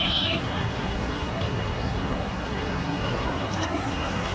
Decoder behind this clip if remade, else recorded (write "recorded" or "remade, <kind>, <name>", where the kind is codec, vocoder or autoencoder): remade, codec, SNAC